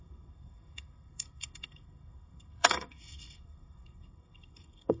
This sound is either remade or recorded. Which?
remade